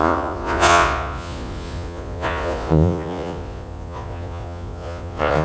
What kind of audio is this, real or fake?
fake